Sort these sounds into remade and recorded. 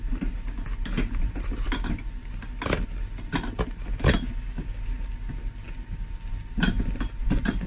recorded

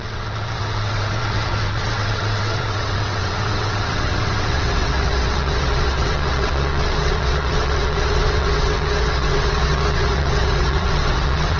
remade